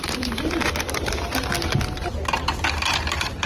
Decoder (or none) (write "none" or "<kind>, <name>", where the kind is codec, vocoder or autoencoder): none